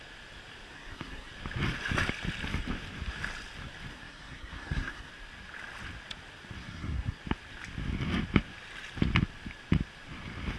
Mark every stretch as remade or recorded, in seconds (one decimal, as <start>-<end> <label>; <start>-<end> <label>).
0.0-0.7 recorded; 0.7-1.3 remade; 1.3-3.9 recorded; 3.9-5.1 remade; 5.1-6.6 recorded; 6.6-7.2 remade; 7.2-10.6 recorded